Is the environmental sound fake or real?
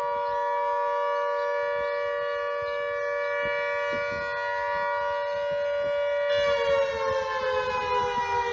real